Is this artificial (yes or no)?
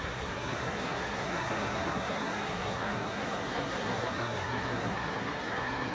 yes